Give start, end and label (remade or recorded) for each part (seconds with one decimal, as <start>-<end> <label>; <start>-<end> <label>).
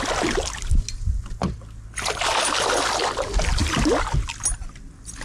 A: 0.0-5.2 recorded